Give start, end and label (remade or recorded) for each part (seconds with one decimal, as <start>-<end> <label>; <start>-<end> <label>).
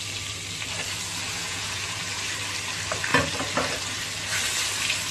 0.0-1.4 recorded; 1.4-2.0 remade; 2.0-5.1 recorded